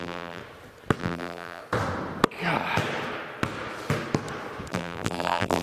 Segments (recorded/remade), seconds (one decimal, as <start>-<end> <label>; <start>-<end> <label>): 0.0-0.4 remade; 0.4-1.0 recorded; 1.0-1.6 remade; 1.6-4.7 recorded; 4.7-5.6 remade